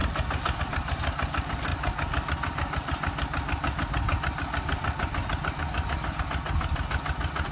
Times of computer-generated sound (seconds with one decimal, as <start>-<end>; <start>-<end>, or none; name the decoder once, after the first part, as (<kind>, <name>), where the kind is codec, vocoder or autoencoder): none